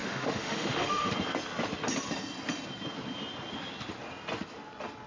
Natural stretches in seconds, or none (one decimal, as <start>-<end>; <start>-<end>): 1.1-5.1